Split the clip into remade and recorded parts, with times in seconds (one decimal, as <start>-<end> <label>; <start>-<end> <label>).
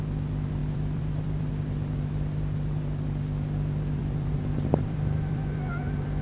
0.0-0.6 recorded; 0.6-1.5 remade; 1.5-4.0 recorded; 4.0-6.2 remade